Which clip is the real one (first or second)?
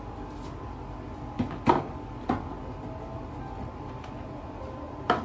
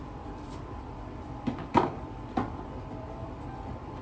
first